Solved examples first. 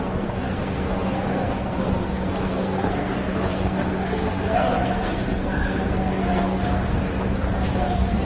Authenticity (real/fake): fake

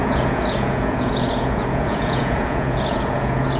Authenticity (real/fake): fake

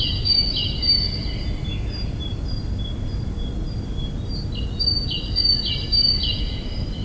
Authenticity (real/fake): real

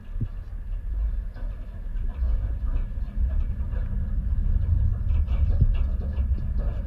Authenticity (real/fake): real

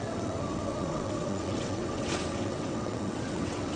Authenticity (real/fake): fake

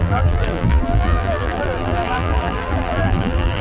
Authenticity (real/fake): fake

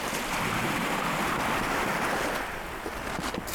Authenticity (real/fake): real